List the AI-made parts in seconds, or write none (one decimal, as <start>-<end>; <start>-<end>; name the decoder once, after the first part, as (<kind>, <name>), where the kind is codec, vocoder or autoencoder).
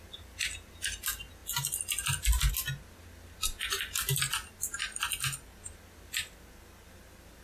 none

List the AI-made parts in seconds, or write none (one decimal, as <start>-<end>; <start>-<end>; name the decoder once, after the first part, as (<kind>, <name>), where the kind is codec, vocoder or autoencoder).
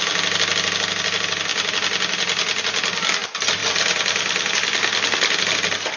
none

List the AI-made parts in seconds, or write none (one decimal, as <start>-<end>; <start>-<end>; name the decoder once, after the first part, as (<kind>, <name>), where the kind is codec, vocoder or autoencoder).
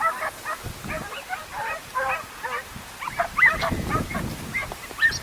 none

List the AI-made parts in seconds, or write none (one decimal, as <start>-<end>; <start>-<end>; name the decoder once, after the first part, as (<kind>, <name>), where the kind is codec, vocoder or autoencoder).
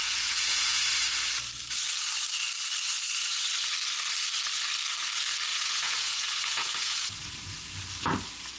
0.0-0.8 (vocoder, Vocos); 5.5-7.3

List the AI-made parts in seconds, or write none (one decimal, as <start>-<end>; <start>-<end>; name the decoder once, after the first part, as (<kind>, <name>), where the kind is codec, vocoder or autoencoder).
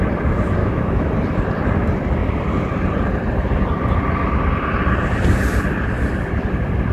0.6-1.1 (autoencoder, DAC-VAE)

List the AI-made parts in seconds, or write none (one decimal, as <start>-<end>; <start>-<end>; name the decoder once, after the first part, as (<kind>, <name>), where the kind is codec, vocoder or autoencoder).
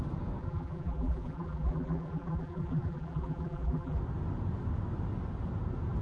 0.4-4.0 (vocoder, BigVGAN v2)